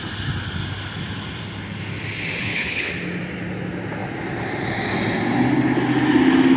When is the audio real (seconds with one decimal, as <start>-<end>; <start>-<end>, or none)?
0.0-2.4; 2.9-6.6